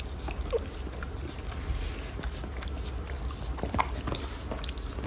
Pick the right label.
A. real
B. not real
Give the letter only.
A